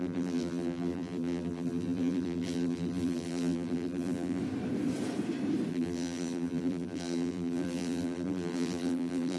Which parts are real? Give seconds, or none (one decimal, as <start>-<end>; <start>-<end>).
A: 4.4-5.7